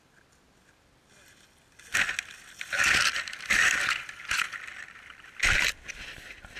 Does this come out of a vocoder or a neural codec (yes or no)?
no